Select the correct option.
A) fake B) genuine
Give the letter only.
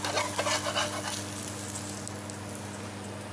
B